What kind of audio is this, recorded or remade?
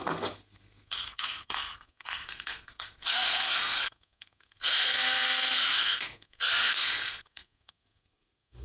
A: remade